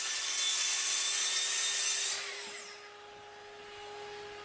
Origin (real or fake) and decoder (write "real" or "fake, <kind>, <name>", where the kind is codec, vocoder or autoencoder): real